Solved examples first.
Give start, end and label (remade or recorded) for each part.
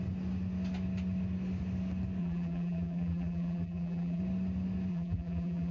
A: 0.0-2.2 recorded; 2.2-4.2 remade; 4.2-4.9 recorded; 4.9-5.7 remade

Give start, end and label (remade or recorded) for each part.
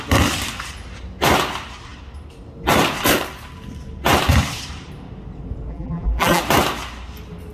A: 0.0-5.7 recorded; 5.7-6.4 remade; 6.4-7.5 recorded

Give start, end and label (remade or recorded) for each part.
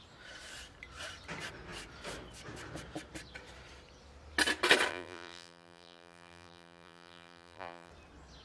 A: 0.0-4.9 recorded; 4.9-7.9 remade; 7.9-8.4 recorded